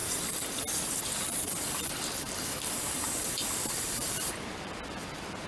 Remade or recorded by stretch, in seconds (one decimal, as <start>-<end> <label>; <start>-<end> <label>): 0.0-5.5 remade